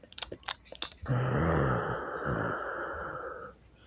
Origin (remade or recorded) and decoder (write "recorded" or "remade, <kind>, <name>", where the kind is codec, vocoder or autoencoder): recorded